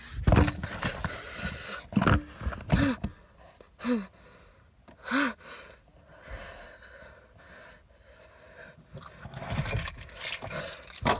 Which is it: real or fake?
real